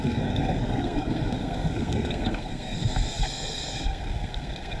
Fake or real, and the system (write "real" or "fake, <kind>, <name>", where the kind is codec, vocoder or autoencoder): fake, codec, SNAC